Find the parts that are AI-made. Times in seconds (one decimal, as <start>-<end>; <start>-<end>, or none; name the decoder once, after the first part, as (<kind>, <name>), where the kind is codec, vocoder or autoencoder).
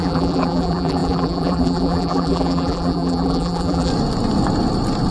0.0-3.9 (vocoder, BigVGAN v2)